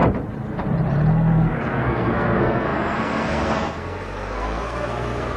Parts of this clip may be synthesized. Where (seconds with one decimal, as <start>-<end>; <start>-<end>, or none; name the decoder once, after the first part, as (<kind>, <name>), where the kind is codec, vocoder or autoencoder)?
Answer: 1.1-5.4 (codec, SNAC)